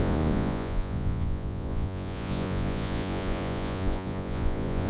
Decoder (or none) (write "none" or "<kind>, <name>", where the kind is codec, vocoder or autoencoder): vocoder, Vocos